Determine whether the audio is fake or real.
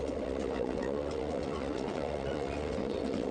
fake